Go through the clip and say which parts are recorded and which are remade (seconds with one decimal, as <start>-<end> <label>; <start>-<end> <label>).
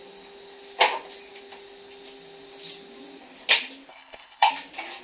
0.0-3.9 recorded; 3.9-4.5 remade; 4.5-5.0 recorded